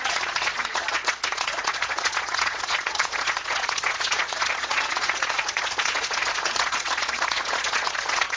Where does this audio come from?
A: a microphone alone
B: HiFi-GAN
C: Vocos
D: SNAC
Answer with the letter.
C